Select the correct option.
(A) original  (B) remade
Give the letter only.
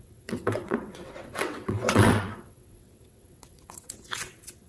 B